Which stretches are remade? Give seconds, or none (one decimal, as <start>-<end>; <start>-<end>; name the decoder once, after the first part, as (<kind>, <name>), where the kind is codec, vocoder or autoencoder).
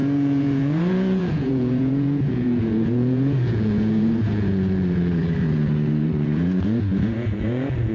0.0-7.9 (vocoder, Vocos)